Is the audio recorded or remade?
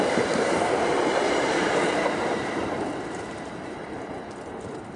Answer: remade